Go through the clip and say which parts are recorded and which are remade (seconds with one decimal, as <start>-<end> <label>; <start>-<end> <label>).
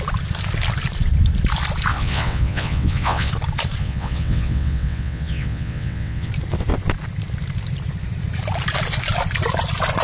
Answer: 0.0-1.9 recorded; 1.9-3.3 remade; 3.3-3.8 recorded; 3.8-6.3 remade; 6.3-10.0 recorded